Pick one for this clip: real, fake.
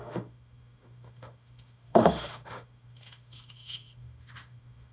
fake